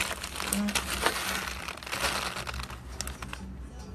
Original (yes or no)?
yes